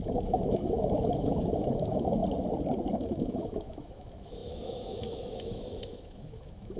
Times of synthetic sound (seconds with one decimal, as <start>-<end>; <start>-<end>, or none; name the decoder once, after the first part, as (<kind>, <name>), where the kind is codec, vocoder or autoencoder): 0.0-2.2 (autoencoder, DAC-VAE); 2.9-6.8